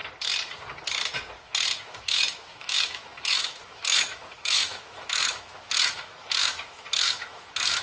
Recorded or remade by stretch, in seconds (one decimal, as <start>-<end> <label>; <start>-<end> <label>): 0.0-1.8 recorded; 1.8-7.8 remade